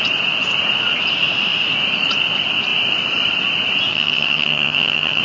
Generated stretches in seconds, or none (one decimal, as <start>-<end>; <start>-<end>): 3.9-5.2

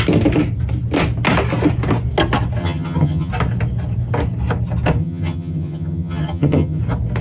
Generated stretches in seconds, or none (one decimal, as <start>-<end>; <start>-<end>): 2.6-3.3; 5.0-6.8

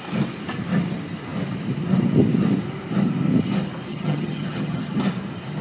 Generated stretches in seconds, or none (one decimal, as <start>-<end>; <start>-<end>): 3.9-4.9

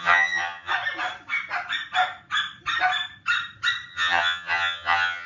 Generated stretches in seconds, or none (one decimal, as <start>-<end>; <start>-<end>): 0.0-0.7; 3.9-5.3